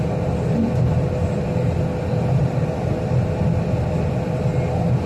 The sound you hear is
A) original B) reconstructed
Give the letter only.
A